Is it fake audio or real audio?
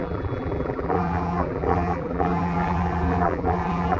fake